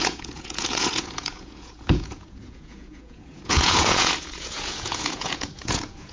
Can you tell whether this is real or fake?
fake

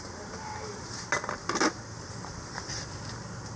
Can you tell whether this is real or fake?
real